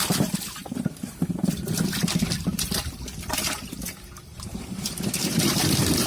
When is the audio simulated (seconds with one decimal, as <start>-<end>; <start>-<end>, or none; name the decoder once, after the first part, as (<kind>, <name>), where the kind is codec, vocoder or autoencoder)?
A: 0.0-6.1 (vocoder, BigVGAN v2)